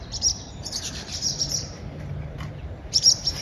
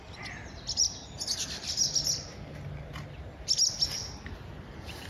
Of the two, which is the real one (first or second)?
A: second